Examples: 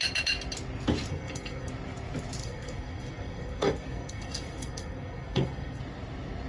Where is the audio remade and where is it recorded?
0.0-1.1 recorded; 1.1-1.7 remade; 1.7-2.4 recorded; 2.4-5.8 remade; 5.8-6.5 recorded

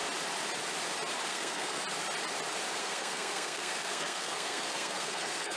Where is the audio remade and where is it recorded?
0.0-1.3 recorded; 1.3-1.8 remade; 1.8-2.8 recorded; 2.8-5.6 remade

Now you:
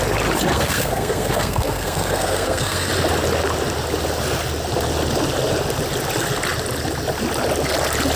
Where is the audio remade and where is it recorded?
0.0-0.5 recorded; 0.5-2.9 remade; 2.9-8.2 recorded

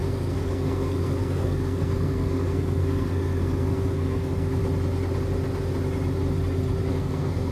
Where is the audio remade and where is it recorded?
0.0-4.6 remade; 4.6-6.9 recorded; 6.9-7.5 remade

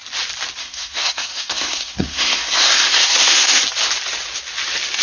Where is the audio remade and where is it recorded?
0.0-0.6 recorded; 0.6-3.6 remade; 3.6-5.0 recorded

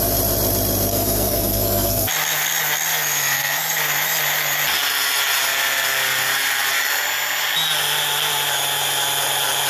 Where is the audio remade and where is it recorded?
0.0-0.9 recorded; 0.9-2.1 remade; 2.1-2.9 recorded; 2.9-3.6 remade; 3.6-9.7 recorded